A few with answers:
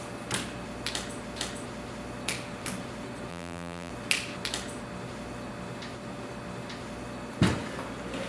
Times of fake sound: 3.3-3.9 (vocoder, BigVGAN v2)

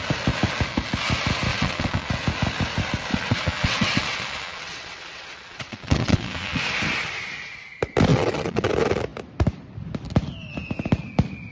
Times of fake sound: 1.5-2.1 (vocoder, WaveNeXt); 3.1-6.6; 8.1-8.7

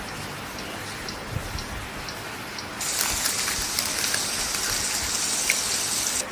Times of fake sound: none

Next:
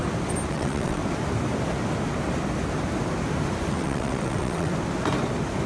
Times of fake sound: 0.5-1.0 (vocoder, WaveNeXt); 3.7-4.7

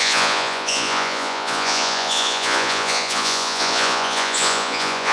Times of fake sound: 0.0-5.1 (vocoder, Vocos)

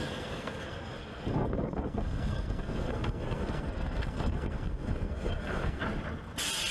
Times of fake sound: 0.0-5.8 (codec, SNAC)

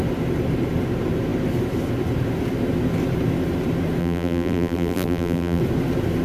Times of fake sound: 4.0-5.6 (vocoder, BigVGAN v2)

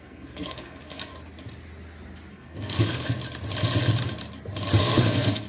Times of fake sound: 0.0-1.1 (codec, SNAC); 2.3-3.2; 4.8-5.5